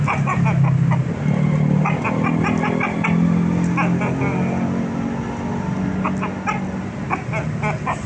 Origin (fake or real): real